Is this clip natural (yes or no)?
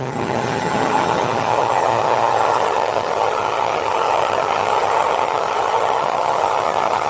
no